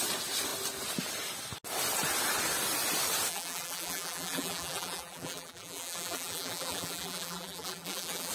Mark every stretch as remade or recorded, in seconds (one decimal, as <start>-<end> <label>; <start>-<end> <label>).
0.0-3.3 recorded; 3.3-8.3 remade